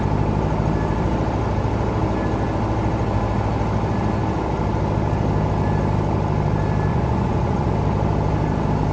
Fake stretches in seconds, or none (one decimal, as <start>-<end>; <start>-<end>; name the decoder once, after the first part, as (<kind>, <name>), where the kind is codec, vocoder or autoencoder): 6.9-7.7 (vocoder, Vocos)